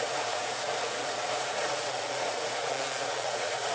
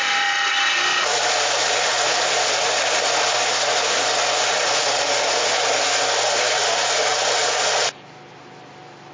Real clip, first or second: second